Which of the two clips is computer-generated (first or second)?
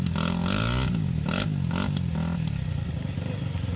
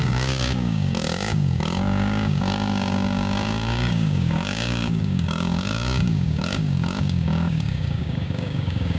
second